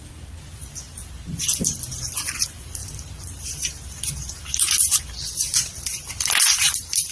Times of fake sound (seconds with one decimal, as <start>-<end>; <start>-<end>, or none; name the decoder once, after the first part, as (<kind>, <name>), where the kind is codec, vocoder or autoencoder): 0.0-7.1 (vocoder, BigVGAN v2)